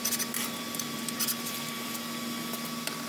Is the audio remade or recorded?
recorded